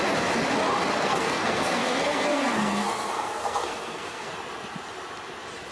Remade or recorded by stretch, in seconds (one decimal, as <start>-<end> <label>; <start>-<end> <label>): 0.0-0.9 recorded; 0.9-4.3 remade; 4.3-5.7 recorded